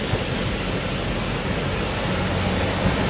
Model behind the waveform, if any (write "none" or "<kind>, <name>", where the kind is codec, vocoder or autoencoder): none